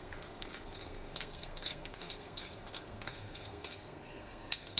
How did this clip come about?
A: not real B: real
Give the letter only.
A